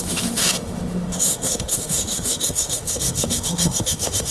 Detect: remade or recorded remade